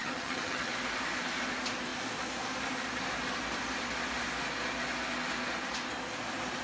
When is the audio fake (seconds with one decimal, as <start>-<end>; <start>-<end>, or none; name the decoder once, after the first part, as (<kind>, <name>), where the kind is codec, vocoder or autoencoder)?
0.0-0.7 (vocoder, HiFi-GAN)